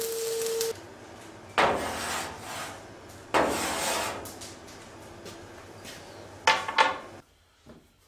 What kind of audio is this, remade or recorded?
recorded